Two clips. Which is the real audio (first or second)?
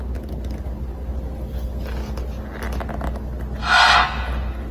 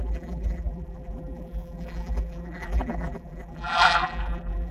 first